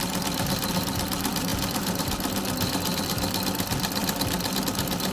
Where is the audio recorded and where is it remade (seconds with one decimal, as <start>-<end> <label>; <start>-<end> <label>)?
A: 0.0-5.1 recorded